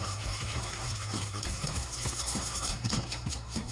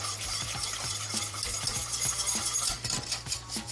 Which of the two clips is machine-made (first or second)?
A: first